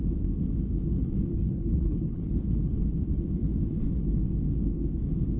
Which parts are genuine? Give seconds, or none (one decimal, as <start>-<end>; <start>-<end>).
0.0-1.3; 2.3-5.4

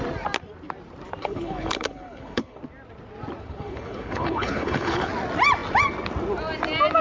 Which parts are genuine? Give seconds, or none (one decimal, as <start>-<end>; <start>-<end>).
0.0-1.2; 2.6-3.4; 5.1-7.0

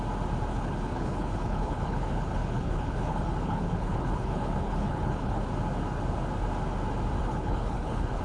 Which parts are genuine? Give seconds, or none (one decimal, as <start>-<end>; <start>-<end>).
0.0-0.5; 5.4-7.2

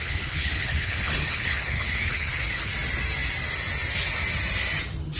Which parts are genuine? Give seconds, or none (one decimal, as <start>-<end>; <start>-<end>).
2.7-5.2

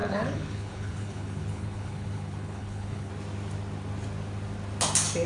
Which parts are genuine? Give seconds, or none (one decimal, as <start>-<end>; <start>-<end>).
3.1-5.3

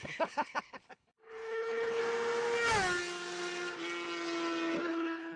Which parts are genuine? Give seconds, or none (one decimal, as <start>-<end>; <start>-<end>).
2.0-4.9

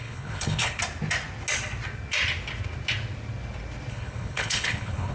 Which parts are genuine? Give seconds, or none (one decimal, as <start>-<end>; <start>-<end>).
0.8-3.9